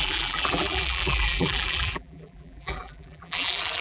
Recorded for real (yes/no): no